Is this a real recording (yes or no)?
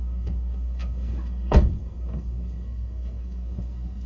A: no